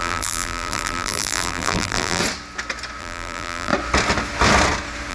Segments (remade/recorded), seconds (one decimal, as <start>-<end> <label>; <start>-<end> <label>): 0.0-2.2 remade; 2.2-3.0 recorded; 3.0-3.7 remade; 3.7-5.1 recorded